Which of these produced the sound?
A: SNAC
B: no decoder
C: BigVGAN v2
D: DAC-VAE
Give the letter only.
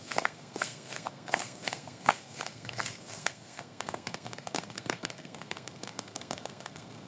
A